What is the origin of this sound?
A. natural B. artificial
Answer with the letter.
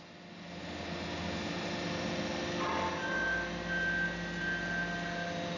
A